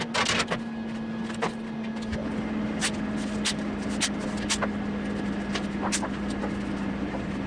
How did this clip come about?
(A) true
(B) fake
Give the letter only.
A